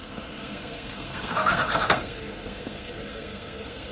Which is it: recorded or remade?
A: remade